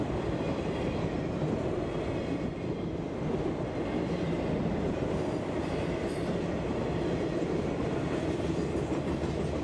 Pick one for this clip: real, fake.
real